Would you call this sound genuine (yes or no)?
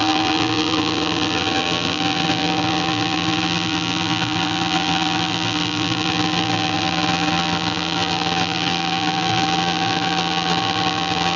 no